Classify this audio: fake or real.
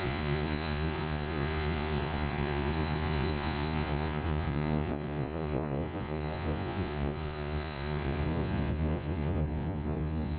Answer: fake